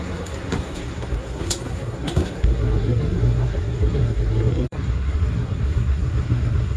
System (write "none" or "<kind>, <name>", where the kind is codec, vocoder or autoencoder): codec, SNAC